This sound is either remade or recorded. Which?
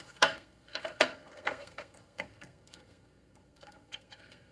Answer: remade